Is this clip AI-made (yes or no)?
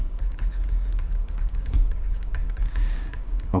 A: yes